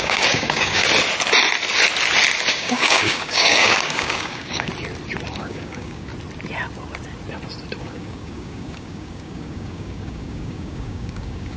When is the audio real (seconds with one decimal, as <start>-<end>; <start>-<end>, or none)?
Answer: 0.8-2.5; 4.7-5.4; 6.1-7.8